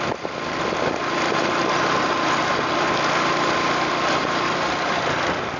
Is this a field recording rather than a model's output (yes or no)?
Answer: yes